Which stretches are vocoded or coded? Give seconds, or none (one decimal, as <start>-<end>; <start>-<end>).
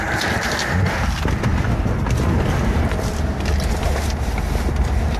none